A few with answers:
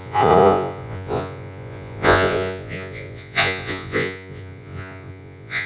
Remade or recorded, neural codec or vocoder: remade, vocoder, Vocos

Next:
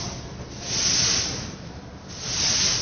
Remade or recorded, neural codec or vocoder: recorded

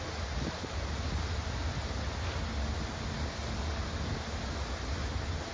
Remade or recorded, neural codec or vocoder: recorded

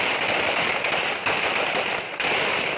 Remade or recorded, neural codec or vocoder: remade, vocoder, BigVGAN v2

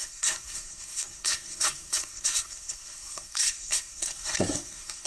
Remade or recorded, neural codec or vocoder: remade, codec, SNAC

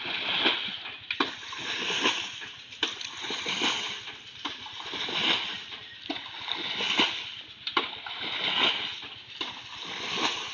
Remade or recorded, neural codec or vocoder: recorded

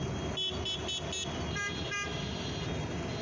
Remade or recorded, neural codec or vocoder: recorded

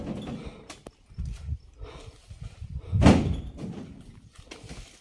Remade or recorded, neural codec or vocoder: recorded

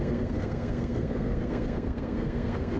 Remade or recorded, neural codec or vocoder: remade, codec, SNAC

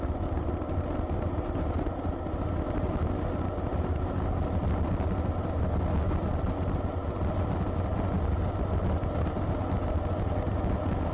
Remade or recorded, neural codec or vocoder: recorded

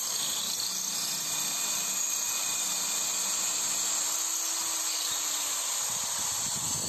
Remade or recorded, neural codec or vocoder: recorded